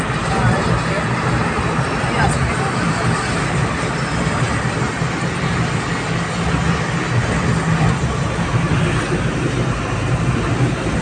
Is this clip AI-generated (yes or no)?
no